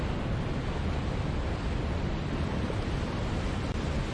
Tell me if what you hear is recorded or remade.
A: recorded